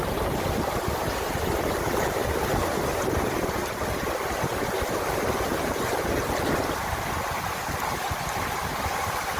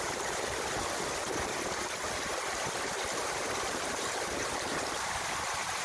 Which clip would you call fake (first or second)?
second